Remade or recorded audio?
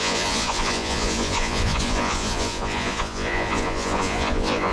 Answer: remade